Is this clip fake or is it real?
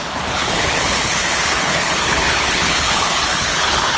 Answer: fake